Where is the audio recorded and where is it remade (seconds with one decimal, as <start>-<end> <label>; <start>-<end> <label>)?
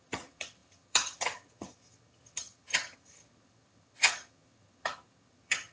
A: 0.0-5.7 remade